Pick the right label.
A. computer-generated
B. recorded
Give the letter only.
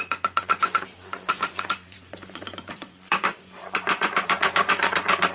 A